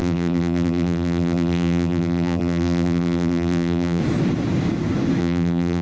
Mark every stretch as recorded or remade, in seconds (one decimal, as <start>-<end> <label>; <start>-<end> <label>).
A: 0.0-4.0 remade; 4.0-5.2 recorded; 5.2-5.8 remade